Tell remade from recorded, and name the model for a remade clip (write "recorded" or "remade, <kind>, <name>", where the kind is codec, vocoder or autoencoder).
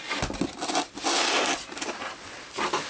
recorded